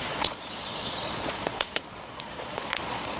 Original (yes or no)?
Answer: no